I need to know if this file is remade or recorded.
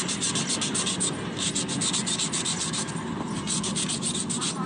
recorded